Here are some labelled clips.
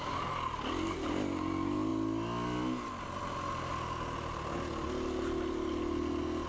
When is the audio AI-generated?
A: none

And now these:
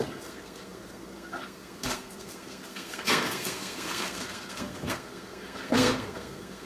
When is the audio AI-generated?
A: 0.0-6.7 (codec, SNAC)